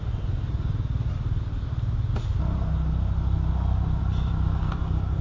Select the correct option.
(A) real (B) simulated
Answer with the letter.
A